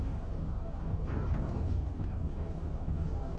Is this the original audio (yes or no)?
no